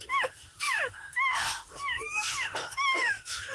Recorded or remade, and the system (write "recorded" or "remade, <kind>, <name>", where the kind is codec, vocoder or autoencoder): remade, autoencoder, DAC-VAE